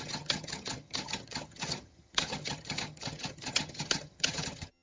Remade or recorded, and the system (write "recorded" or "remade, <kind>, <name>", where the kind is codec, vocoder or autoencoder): remade, vocoder, HiFi-GAN